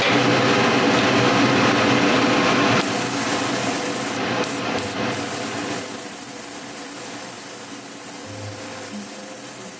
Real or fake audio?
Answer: real